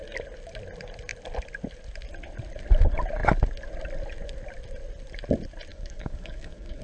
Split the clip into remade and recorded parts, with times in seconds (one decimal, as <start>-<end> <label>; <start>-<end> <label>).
0.0-5.7 recorded; 5.7-6.8 remade